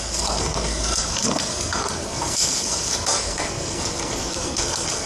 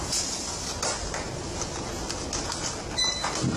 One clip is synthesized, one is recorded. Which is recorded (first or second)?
second